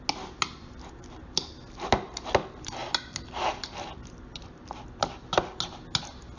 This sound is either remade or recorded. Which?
recorded